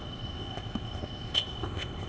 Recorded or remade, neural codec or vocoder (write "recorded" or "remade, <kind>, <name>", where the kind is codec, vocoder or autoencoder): remade, codec, ZipCodec